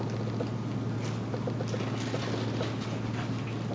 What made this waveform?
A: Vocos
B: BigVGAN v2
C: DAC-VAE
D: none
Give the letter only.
D